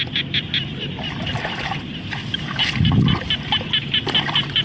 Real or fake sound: real